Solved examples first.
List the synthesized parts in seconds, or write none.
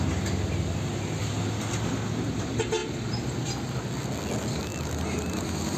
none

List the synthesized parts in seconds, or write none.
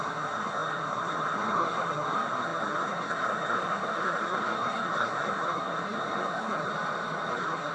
0.0-6.7 (codec, SNAC); 7.3-7.7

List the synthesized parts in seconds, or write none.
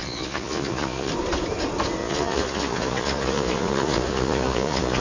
0.0-1.1 (vocoder, Vocos); 2.0-5.0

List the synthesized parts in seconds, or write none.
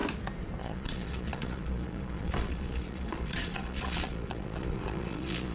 0.6-5.5 (vocoder, Vocos)